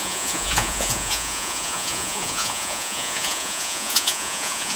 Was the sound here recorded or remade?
remade